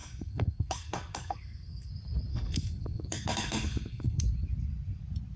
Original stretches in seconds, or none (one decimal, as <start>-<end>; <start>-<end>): 1.9-2.3; 4.2-5.4